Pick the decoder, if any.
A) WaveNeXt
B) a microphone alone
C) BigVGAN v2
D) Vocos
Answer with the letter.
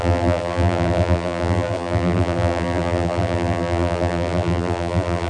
C